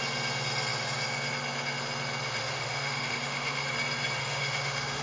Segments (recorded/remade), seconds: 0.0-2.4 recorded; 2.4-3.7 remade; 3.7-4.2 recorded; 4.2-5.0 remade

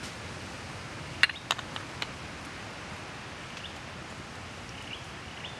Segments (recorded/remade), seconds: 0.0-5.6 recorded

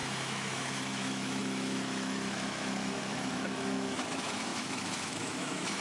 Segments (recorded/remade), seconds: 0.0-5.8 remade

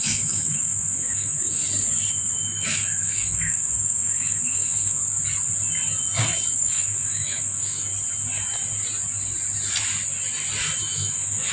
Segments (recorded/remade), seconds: 0.0-1.6 remade; 1.6-2.1 recorded; 2.1-5.0 remade; 5.0-6.6 recorded; 6.6-7.9 remade; 7.9-10.8 recorded; 10.8-11.5 remade

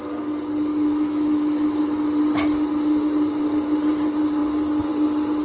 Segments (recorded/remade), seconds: 0.0-0.7 recorded; 0.7-2.2 remade; 2.2-5.4 recorded

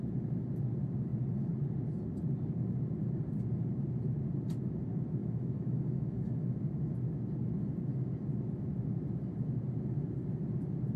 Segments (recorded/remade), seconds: 0.0-5.2 recorded; 5.2-6.6 remade; 6.6-11.0 recorded